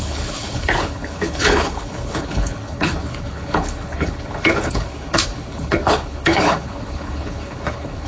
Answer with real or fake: fake